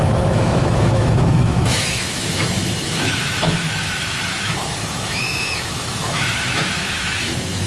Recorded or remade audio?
remade